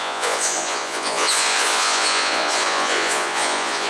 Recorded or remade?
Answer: remade